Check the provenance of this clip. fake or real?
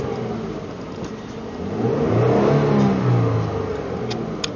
real